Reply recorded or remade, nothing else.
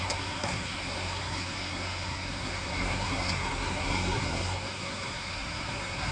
remade